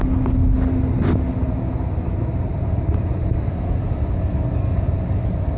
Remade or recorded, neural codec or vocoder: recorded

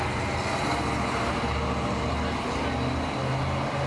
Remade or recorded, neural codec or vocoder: recorded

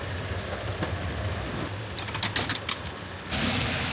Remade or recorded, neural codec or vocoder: recorded